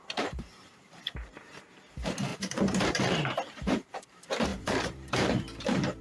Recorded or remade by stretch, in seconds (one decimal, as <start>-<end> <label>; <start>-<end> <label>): 0.0-6.0 remade